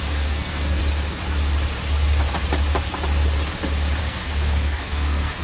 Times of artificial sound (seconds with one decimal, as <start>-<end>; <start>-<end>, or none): 0.0-0.8; 4.0-5.4